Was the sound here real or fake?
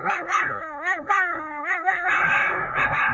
fake